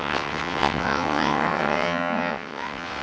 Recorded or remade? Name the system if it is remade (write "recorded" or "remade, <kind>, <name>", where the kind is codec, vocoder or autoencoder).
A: remade, vocoder, WaveNeXt